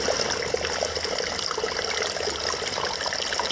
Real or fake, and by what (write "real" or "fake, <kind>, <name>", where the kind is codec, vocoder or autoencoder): real